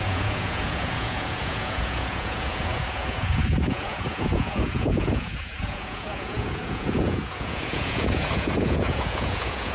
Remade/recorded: remade